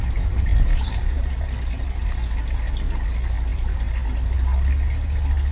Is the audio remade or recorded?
recorded